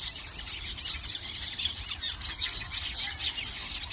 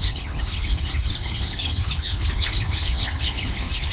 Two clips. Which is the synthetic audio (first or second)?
second